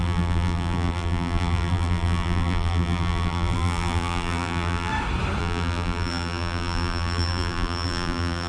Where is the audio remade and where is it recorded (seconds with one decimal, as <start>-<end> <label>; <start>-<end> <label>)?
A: 0.0-4.9 remade; 4.9-5.4 recorded; 5.4-8.5 remade